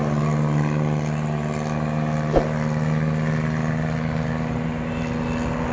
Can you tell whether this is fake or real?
real